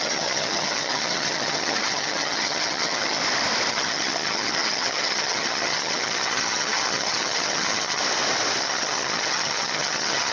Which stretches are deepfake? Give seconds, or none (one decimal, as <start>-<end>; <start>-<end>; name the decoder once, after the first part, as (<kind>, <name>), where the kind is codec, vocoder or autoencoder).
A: 0.0-3.2 (vocoder, HiFi-GAN); 3.7-8.0; 8.6-10.3